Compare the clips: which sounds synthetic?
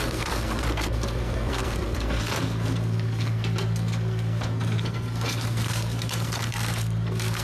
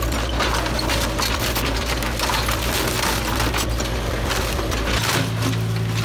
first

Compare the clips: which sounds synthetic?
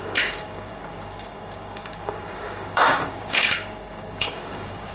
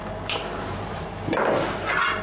first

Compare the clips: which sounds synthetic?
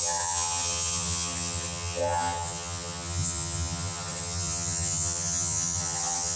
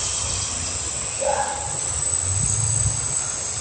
first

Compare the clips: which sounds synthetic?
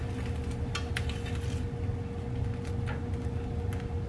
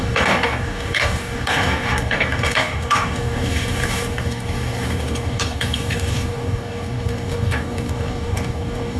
second